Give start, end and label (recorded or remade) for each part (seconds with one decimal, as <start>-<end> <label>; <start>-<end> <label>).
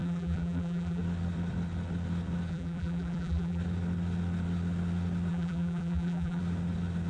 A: 0.0-1.0 remade; 1.0-2.5 recorded; 2.5-3.6 remade; 3.6-5.3 recorded; 5.3-6.4 remade; 6.4-7.1 recorded